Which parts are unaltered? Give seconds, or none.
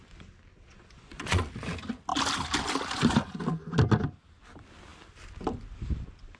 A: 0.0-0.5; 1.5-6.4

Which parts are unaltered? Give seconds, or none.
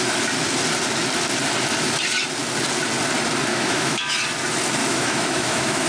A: 0.0-3.5; 4.2-4.8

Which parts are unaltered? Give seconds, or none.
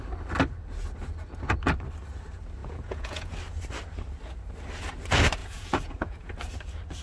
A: 0.0-2.6; 3.4-5.4; 6.3-7.0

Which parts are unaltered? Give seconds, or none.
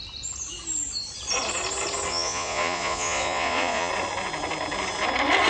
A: 0.0-2.1; 3.9-5.5